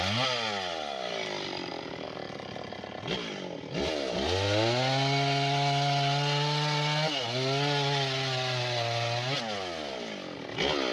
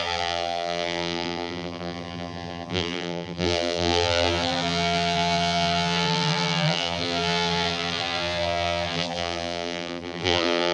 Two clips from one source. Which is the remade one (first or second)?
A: second